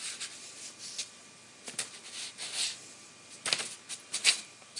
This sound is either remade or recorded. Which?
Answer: recorded